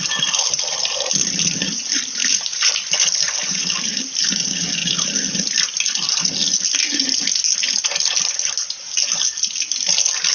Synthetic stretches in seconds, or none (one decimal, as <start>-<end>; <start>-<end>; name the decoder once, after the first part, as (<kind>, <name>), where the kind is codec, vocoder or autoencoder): 2.2-2.8 (vocoder, BigVGAN v2)